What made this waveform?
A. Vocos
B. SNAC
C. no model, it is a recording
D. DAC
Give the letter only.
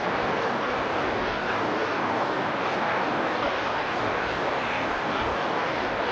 D